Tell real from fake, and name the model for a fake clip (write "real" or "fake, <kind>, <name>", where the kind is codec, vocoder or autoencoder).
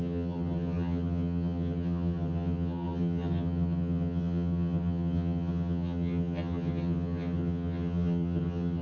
fake, vocoder, HiFi-GAN